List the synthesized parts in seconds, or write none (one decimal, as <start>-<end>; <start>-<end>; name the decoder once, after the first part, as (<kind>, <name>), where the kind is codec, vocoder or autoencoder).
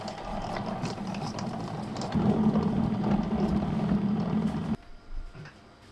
4.9-5.4 (vocoder, BigVGAN v2)